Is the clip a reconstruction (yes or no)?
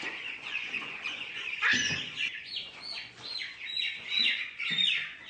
yes